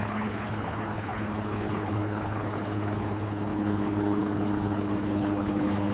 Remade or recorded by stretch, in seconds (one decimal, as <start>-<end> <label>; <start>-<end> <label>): 0.0-5.9 remade

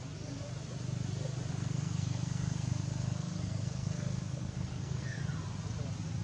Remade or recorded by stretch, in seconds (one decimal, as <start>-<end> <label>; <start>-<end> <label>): 0.0-1.5 recorded; 1.5-5.2 remade; 5.2-6.2 recorded

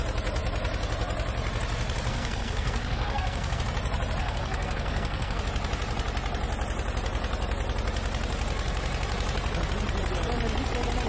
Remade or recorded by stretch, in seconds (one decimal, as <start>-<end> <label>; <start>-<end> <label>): 0.0-2.1 recorded; 2.1-3.6 remade; 3.6-4.2 recorded; 4.2-5.4 remade; 5.4-11.1 recorded